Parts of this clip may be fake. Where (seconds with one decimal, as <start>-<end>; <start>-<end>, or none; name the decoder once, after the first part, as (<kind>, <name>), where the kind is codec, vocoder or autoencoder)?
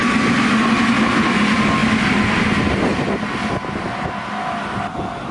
none